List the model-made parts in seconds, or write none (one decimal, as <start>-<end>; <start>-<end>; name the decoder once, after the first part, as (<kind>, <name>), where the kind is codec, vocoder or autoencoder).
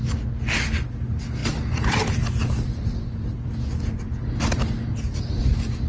none